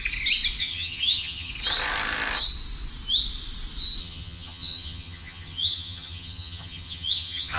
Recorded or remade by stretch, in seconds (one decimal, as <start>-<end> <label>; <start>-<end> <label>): 0.0-0.6 recorded; 0.6-1.5 remade; 1.5-4.0 recorded; 4.0-7.6 remade